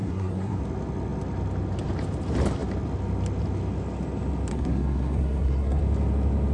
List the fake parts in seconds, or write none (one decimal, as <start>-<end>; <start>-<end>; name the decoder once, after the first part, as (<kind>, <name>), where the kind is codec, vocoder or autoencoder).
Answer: 0.0-0.6 (codec, SNAC); 4.5-5.8